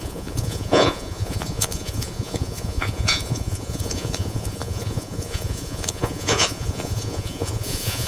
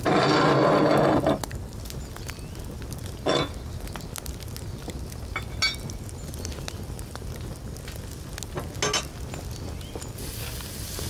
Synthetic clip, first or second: first